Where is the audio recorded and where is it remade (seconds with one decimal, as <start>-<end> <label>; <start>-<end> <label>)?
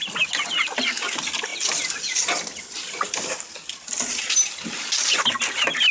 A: 0.0-5.9 recorded